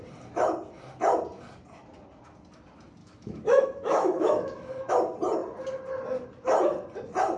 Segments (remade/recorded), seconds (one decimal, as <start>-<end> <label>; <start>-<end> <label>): 0.0-3.0 recorded; 3.0-4.9 remade; 4.9-7.4 recorded